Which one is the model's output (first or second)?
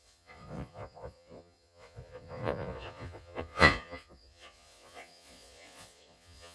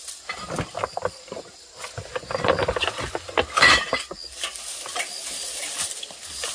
first